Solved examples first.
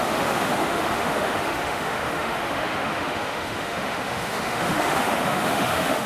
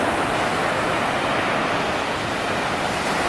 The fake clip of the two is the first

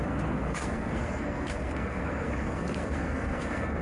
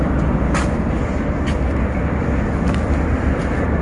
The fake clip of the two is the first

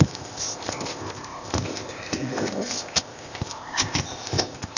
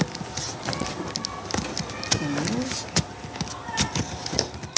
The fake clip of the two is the first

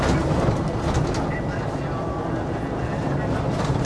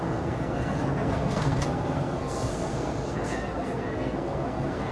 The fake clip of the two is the second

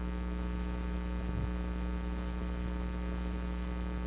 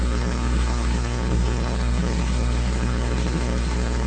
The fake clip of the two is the second